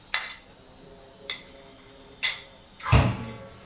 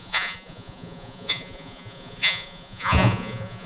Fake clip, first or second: second